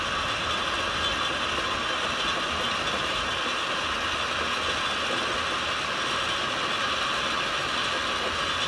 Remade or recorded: recorded